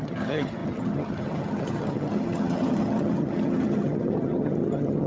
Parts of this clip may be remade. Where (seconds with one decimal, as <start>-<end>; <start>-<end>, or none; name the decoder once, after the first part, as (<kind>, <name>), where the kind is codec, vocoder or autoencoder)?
0.0-5.1 (vocoder, HiFi-GAN)